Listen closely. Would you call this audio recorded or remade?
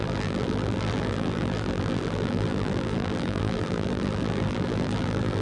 remade